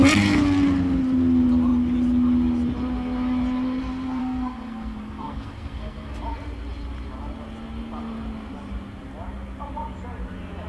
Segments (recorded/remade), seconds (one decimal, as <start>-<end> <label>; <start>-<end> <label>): 0.0-4.2 recorded; 4.2-6.2 remade; 6.2-10.7 recorded